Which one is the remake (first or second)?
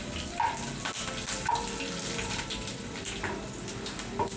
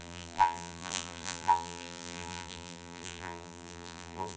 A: second